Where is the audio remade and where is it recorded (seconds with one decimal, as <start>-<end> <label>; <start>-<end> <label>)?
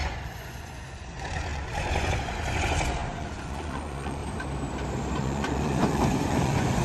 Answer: 0.0-4.2 remade; 4.2-5.2 recorded; 5.2-6.8 remade